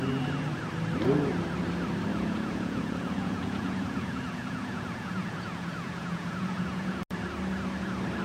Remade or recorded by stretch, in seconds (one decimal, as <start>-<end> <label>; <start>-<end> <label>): 0.0-2.1 recorded; 2.1-7.0 remade; 7.0-8.2 recorded